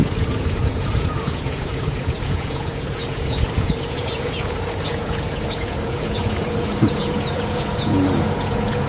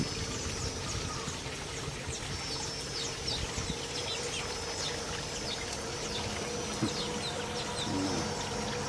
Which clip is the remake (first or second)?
first